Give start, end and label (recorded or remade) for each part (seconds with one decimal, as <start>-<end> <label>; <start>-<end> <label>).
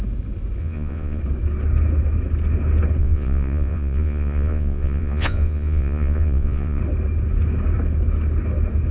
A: 0.0-0.6 recorded; 0.6-1.2 remade; 1.2-3.0 recorded; 3.0-6.8 remade; 6.8-8.9 recorded